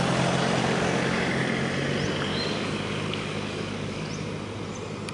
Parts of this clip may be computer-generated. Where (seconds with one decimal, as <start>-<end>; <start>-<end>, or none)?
0.6-1.5; 2.3-4.1

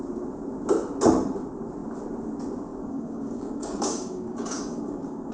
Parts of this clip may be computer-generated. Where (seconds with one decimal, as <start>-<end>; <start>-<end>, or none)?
2.7-5.3

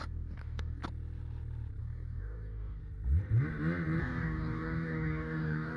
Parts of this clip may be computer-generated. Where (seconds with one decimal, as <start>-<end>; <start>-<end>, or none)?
0.0-0.8; 1.8-2.8; 4.0-5.8

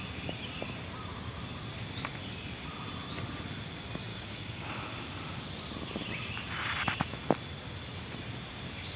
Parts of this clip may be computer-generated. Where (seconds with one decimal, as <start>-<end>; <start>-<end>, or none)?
4.1-4.7

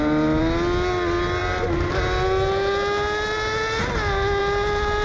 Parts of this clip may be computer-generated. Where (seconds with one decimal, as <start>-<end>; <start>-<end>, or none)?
none

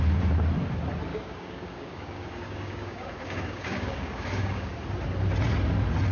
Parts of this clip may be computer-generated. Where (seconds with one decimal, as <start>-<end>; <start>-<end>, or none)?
1.1-4.7

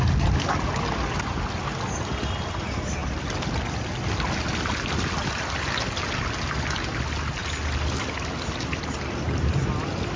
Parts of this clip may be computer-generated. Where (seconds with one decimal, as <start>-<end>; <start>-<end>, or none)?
none

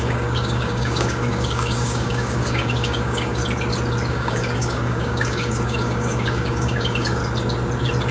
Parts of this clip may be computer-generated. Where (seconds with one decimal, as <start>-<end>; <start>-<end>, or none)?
0.0-3.4; 4.1-7.2